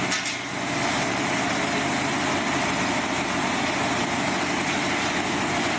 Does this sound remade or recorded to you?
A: recorded